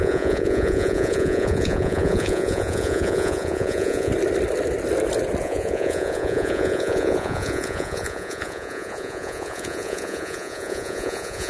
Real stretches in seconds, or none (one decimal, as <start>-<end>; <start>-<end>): 4.1-5.4